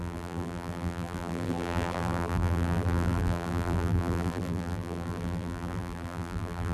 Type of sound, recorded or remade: remade